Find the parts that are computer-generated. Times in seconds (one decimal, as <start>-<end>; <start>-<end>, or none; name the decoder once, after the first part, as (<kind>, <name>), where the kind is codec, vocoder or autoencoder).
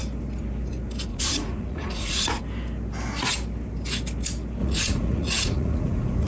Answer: 1.1-2.4 (vocoder, Vocos); 4.6-6.3